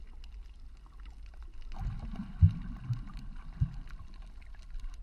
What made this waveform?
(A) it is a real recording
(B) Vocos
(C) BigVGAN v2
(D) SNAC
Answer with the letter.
A